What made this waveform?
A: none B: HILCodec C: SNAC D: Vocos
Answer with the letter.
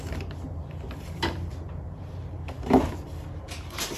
A